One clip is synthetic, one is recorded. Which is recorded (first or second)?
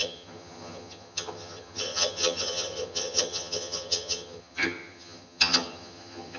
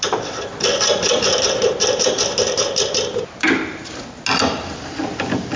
second